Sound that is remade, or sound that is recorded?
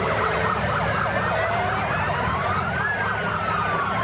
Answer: recorded